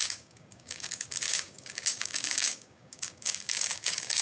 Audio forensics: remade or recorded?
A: remade